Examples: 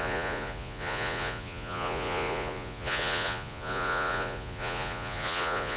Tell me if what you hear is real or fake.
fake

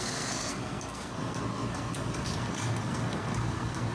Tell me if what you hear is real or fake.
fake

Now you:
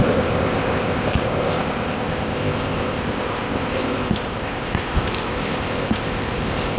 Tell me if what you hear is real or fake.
fake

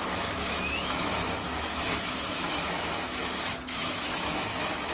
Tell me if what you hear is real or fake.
fake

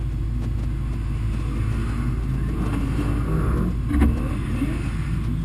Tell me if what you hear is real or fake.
real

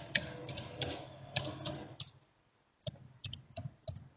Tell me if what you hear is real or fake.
real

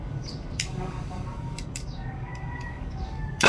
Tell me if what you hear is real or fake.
fake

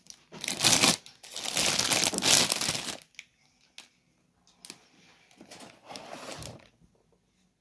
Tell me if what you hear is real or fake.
real